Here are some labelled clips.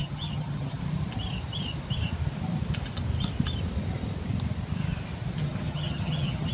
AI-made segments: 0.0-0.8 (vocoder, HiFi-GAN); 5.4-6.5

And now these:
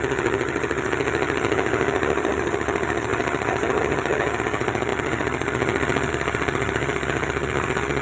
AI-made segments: 0.0-8.0 (vocoder, HiFi-GAN)

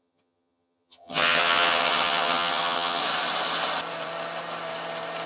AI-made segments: 0.0-3.0 (vocoder, HiFi-GAN)

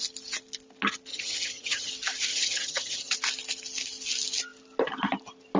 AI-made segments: 1.1-1.9 (vocoder, HiFi-GAN); 2.3-3.1

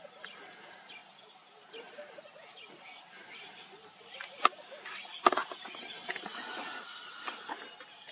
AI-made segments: none

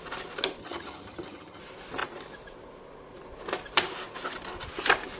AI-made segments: 0.6-1.6 (vocoder, HiFi-GAN)

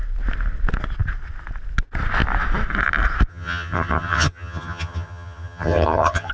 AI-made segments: 3.3-6.3 (vocoder, HiFi-GAN)

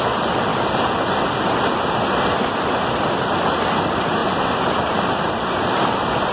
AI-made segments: none